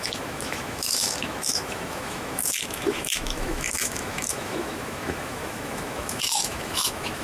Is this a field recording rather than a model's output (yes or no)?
no